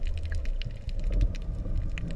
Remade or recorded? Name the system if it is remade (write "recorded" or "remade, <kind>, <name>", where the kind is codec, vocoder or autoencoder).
recorded